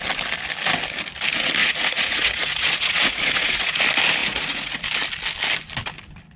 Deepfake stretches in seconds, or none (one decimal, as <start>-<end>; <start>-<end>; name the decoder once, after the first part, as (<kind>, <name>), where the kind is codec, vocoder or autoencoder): 1.6-3.8 (vocoder, Vocos); 4.2-4.8